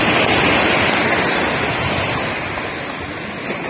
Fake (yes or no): yes